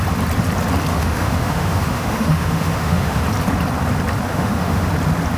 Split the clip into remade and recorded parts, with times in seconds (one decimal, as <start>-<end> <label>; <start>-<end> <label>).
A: 0.0-0.9 recorded; 0.9-3.2 remade; 3.2-4.3 recorded; 4.3-4.9 remade; 4.9-5.4 recorded